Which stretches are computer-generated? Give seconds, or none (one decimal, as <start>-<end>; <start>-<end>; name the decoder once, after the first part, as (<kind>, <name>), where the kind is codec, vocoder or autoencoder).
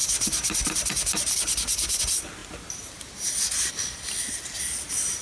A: none